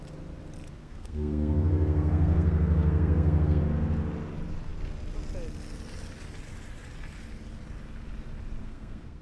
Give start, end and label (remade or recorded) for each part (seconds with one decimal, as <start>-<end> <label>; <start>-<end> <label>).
0.0-0.8 recorded; 0.8-3.6 remade; 3.6-8.6 recorded; 8.6-9.2 remade